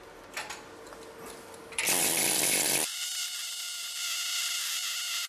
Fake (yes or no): no